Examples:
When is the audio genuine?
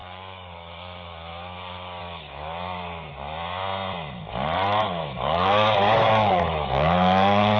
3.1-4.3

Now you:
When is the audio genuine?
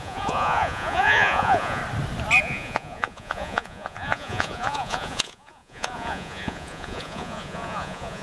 1.8-2.4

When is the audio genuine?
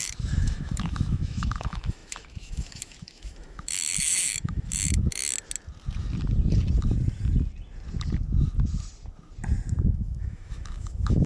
5.2-9.8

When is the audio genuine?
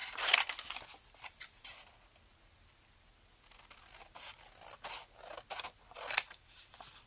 0.0-1.2; 1.9-5.8